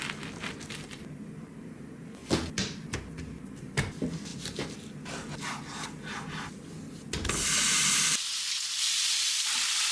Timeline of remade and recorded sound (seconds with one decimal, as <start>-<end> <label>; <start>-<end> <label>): 0.0-9.9 recorded